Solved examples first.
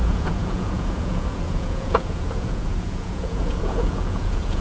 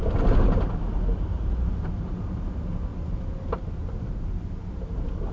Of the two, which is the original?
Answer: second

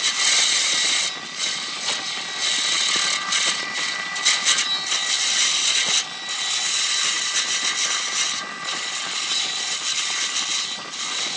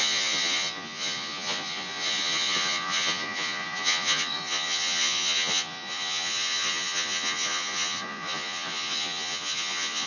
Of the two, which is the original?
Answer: first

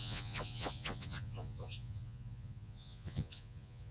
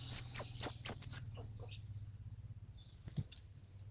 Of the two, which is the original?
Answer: second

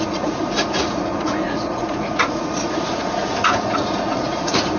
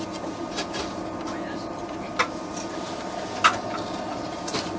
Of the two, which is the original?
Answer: second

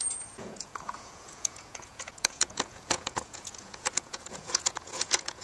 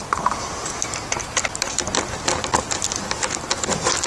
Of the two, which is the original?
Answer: second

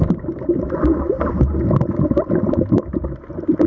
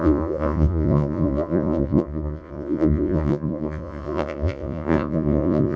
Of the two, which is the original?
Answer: first